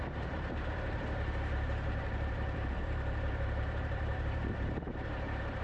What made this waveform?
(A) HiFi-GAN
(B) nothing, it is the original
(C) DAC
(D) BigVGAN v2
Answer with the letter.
D